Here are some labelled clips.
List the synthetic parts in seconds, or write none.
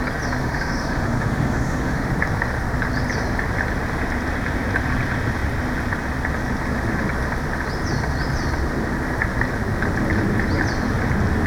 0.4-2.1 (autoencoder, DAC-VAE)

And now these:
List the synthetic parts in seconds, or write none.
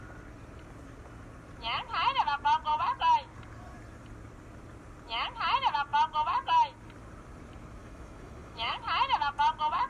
7.8-8.8 (autoencoder, DAC-VAE)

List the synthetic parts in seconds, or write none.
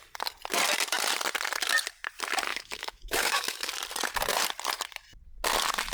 2.5-3.7 (autoencoder, DAC-VAE)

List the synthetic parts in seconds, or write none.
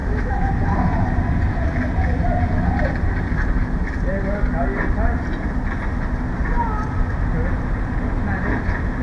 0.0-0.5 (autoencoder, DAC-VAE)